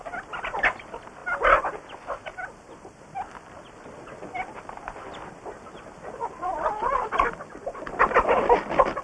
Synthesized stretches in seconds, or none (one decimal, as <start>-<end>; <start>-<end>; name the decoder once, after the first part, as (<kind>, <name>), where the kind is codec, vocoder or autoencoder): none

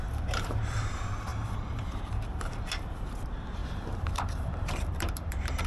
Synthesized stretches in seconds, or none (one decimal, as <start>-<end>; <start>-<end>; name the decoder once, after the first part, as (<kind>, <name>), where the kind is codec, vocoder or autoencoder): 0.0-5.7 (vocoder, BigVGAN v2)

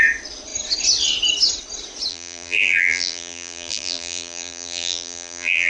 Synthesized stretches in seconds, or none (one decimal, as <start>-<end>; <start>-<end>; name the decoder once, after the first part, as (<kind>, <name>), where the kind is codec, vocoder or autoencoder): 2.1-5.7 (vocoder, BigVGAN v2)

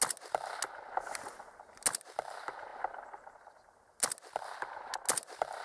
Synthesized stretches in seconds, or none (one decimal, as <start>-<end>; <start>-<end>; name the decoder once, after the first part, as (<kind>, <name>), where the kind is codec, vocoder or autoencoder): none

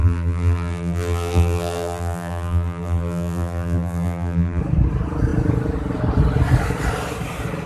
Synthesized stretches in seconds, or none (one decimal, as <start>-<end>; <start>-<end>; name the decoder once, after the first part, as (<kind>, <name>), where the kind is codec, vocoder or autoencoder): 0.0-4.6 (vocoder, BigVGAN v2)

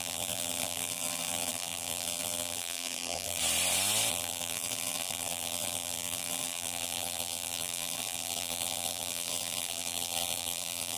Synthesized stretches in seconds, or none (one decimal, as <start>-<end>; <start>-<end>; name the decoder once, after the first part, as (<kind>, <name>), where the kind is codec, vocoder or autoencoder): 0.0-3.4 (vocoder, BigVGAN v2); 4.1-11.0

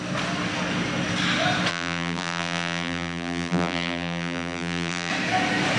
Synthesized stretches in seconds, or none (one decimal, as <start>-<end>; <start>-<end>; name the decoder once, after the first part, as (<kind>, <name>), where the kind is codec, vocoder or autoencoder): 1.7-5.1 (vocoder, BigVGAN v2)

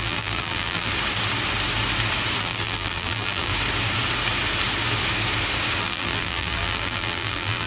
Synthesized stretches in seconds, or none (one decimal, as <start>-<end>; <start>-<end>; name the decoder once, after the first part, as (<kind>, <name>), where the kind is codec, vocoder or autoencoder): 0.0-0.9 (vocoder, BigVGAN v2); 2.4-3.5; 5.8-7.7